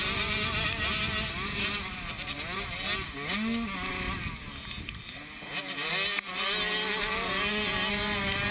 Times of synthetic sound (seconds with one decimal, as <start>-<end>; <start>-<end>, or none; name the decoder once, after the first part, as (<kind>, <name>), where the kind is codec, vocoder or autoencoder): none

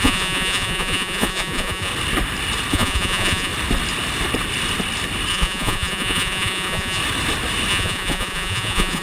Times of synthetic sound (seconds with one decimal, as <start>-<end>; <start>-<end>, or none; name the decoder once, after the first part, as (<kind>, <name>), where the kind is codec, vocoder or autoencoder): 0.0-1.9 (vocoder, Vocos); 2.7-3.5; 5.3-7.0; 7.7-9.0

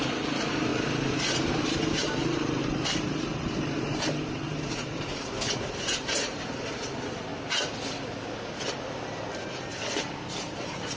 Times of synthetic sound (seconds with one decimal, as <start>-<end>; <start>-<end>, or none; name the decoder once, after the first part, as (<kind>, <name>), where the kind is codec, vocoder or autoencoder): 0.0-7.3 (vocoder, BigVGAN v2); 10.0-11.0

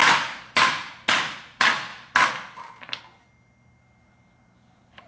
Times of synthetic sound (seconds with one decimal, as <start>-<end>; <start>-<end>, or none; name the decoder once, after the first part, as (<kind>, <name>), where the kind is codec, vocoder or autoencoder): none

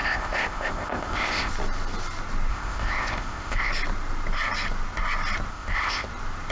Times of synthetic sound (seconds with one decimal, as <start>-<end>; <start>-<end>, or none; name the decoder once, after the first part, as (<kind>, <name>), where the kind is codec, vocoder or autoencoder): 0.0-1.5 (codec, ZipCodec); 2.5-3.7; 5.5-6.1

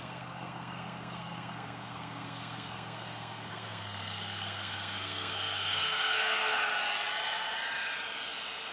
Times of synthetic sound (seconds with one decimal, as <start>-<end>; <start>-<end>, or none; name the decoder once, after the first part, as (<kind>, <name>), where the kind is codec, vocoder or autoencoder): 0.0-6.7 (codec, SNAC)

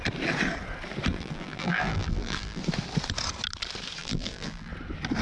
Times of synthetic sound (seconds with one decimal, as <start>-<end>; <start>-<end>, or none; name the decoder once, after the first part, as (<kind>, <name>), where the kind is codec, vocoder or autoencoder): 1.1-2.6 (vocoder, BigVGAN v2); 4.0-4.7